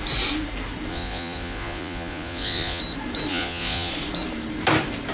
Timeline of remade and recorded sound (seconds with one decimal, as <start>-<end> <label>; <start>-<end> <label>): 0.0-0.9 recorded; 0.9-2.8 remade; 2.8-3.3 recorded; 3.3-3.9 remade; 3.9-5.1 recorded